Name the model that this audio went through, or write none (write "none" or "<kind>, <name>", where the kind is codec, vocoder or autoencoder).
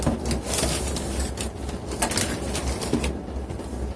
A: none